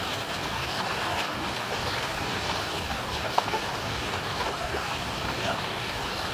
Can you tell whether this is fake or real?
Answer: fake